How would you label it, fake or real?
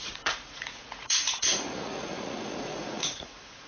fake